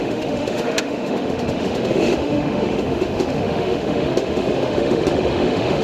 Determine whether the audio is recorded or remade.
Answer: remade